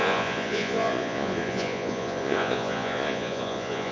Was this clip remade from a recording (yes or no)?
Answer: yes